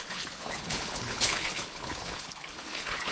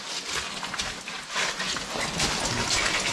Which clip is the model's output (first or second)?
first